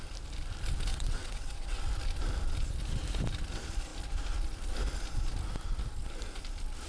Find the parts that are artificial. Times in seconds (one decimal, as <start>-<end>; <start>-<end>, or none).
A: 0.9-1.9

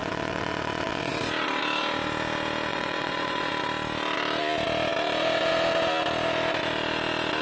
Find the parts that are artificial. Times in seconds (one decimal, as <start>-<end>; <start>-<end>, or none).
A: 0.0-1.1; 2.7-3.5

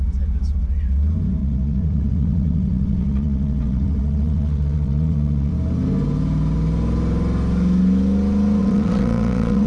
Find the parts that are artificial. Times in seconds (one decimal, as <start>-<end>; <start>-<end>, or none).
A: 1.4-5.5; 8.6-9.7

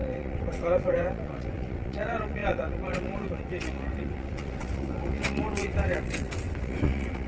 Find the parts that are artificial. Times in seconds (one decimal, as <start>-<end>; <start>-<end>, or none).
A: 0.0-7.3

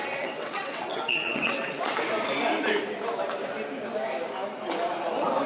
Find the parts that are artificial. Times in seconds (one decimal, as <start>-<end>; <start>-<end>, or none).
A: 0.0-1.8

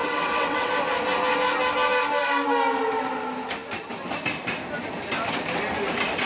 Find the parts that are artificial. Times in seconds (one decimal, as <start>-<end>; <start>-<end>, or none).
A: 0.0-0.7

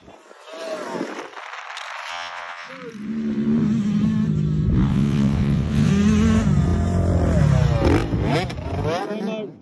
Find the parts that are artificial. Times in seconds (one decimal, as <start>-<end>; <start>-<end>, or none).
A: 2.1-2.7; 4.9-5.9